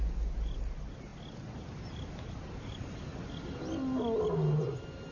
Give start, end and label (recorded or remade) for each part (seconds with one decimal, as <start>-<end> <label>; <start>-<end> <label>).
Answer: 0.0-5.1 recorded

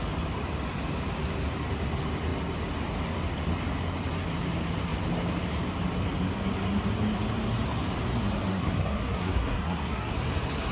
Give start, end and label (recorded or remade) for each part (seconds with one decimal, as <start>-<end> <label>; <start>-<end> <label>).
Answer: 0.0-8.5 recorded; 8.5-10.1 remade; 10.1-10.7 recorded

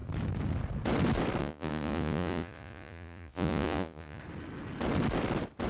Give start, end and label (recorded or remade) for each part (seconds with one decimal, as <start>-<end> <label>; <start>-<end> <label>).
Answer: 0.0-1.4 recorded; 1.4-4.2 remade; 4.2-5.7 recorded